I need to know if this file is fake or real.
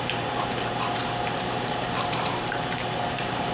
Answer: fake